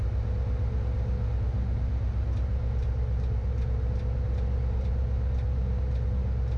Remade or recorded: recorded